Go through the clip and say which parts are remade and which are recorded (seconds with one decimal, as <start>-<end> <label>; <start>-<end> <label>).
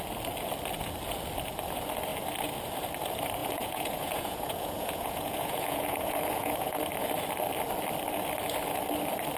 0.0-3.4 recorded; 3.4-6.8 remade; 6.8-9.4 recorded